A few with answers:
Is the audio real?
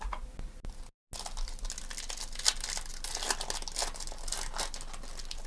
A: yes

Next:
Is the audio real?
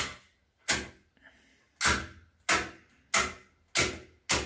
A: yes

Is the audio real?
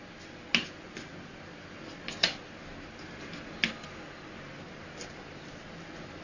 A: yes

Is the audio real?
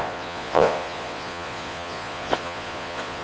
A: no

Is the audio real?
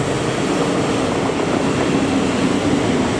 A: yes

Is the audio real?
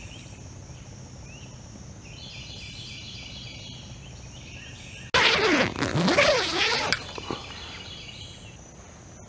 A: yes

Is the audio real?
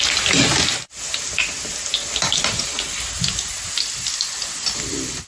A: yes